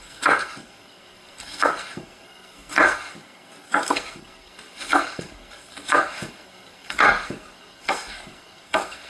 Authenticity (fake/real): fake